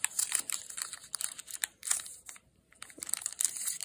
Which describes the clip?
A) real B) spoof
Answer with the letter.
B